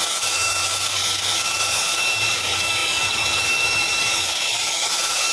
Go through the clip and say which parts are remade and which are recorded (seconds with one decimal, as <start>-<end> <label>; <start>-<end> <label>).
0.0-5.3 remade

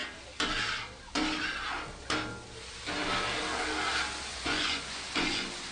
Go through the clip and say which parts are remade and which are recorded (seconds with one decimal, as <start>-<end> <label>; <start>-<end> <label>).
0.0-4.3 recorded; 4.3-5.7 remade

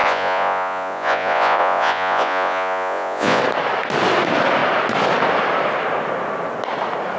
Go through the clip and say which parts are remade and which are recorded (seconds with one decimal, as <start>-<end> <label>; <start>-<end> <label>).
0.0-3.4 remade; 3.4-7.2 recorded

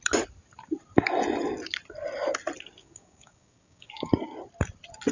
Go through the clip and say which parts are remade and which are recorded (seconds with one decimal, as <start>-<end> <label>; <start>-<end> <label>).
0.0-2.8 recorded; 2.8-4.1 remade; 4.1-5.1 recorded

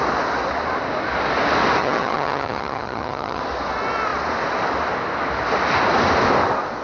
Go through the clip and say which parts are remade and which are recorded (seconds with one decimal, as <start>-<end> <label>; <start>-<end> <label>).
0.0-1.8 recorded; 1.8-3.4 remade; 3.4-6.8 recorded

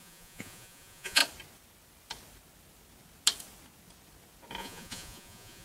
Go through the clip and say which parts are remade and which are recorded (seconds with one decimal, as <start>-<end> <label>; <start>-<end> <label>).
0.0-1.2 remade; 1.2-4.6 recorded; 4.6-5.6 remade